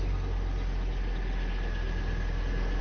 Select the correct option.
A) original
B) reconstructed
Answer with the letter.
A